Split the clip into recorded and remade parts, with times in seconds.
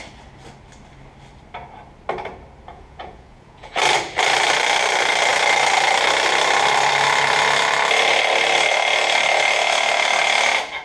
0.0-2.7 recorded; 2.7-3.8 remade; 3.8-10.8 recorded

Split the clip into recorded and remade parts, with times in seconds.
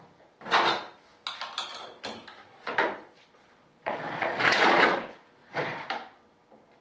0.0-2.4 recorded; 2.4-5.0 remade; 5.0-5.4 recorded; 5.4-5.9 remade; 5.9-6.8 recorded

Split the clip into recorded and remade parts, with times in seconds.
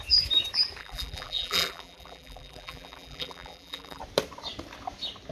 0.0-0.8 recorded; 0.8-4.0 remade; 4.0-5.3 recorded